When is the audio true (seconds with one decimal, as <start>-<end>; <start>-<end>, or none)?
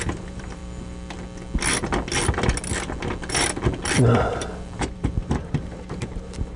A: 0.6-4.3